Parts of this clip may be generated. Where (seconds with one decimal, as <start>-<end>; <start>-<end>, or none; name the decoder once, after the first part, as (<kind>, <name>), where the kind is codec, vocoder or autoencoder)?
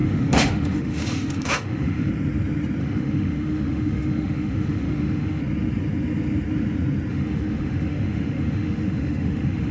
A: 0.0-2.1 (autoencoder, DAC-VAE); 2.8-5.4; 7.1-9.7